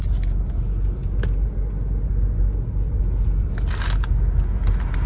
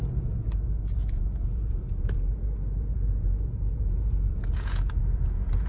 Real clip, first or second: first